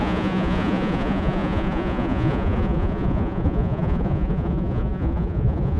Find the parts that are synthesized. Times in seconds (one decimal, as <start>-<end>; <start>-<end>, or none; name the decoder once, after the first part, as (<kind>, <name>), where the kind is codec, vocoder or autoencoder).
0.0-5.8 (vocoder, Vocos)